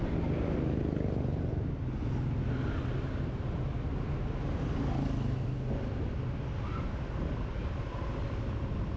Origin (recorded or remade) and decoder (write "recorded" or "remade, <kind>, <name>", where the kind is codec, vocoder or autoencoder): recorded